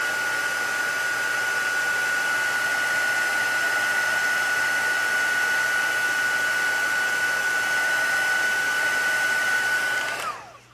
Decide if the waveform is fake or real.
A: real